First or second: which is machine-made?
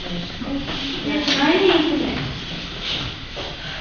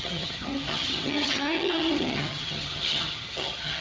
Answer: second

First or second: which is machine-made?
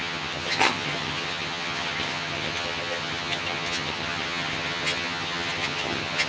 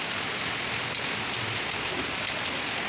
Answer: first